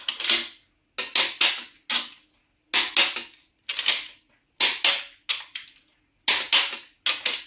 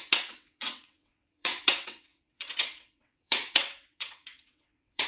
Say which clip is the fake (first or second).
second